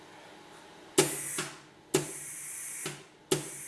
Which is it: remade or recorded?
recorded